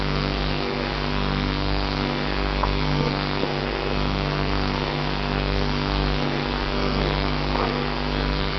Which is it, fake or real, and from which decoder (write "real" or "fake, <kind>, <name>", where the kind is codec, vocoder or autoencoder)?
fake, codec, SNAC